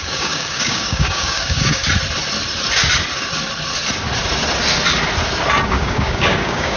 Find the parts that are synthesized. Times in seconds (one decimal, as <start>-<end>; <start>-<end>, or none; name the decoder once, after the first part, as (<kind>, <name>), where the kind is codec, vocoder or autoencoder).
0.0-1.8 (codec, DAC); 5.7-6.8